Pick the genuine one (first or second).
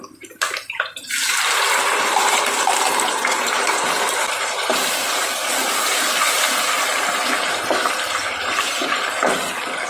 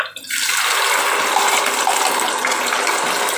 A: second